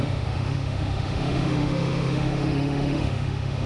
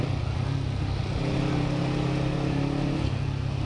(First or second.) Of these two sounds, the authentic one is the second